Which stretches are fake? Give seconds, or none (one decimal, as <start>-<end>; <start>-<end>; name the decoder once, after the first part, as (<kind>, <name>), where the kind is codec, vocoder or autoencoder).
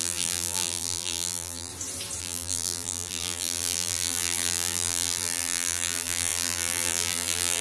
0.0-1.7 (vocoder, BigVGAN v2); 2.2-7.6